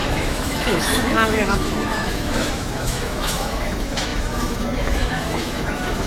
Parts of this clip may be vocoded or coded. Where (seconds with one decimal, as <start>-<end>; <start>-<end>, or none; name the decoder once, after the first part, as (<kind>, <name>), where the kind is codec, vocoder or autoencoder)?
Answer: 0.0-6.1 (autoencoder, DAC-VAE)